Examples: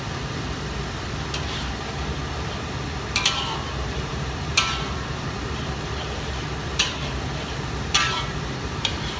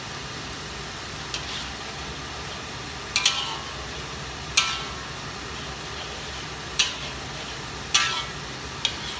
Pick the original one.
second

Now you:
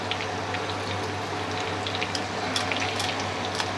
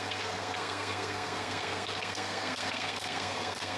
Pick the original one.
first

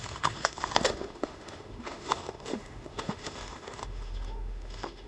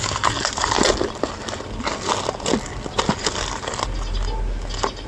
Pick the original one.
second